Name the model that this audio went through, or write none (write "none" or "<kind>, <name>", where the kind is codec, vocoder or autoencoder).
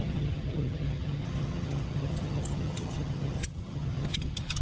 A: vocoder, HiFi-GAN